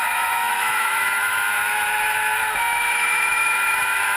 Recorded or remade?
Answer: remade